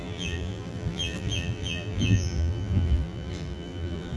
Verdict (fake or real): fake